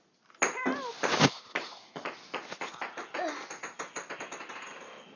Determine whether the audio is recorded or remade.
recorded